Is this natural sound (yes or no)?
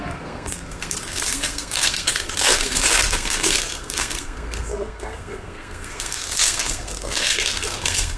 no